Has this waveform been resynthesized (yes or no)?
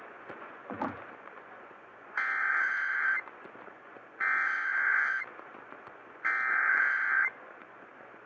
yes